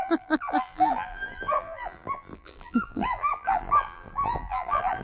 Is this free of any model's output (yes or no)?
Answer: no